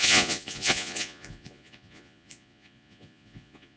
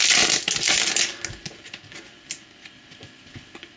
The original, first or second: second